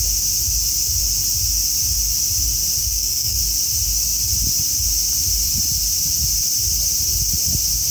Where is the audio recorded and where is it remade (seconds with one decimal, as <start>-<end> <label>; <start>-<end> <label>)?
0.0-2.8 recorded; 2.8-3.4 remade; 3.4-7.9 recorded